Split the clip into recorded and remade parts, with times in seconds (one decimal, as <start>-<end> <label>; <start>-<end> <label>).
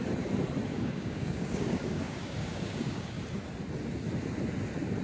0.0-0.7 recorded; 0.7-3.2 remade; 3.2-5.0 recorded